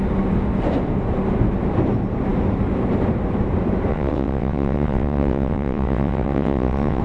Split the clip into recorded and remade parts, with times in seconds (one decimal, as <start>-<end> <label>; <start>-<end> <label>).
0.0-3.9 recorded; 3.9-7.0 remade